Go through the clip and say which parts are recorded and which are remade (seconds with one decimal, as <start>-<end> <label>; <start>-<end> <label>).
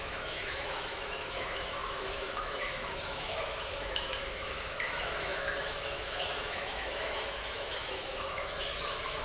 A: 0.0-9.2 remade